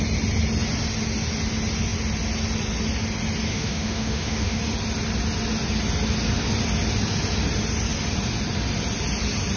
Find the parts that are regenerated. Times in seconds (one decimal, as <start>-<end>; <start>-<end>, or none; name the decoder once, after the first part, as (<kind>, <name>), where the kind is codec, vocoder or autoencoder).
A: 3.5-4.6 (autoencoder, DAC-VAE)